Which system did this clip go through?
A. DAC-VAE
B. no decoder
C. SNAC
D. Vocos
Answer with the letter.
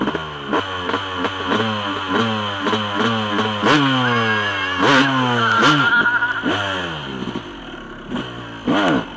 B